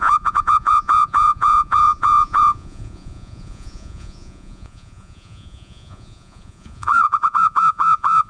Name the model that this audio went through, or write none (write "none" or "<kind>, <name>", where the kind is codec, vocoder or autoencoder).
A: vocoder, Vocos